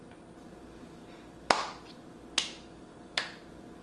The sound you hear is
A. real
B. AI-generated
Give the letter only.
A